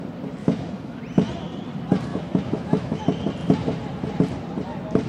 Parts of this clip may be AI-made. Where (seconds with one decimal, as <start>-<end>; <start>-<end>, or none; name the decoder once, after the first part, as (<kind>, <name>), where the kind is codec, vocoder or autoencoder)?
0.4-1.0 (autoencoder, DAC-VAE); 2.1-3.0